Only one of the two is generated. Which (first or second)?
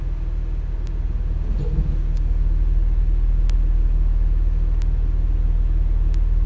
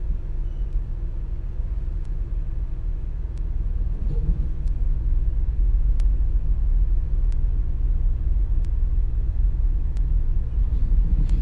second